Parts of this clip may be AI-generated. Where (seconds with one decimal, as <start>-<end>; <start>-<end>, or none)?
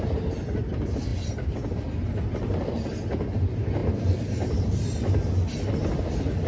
none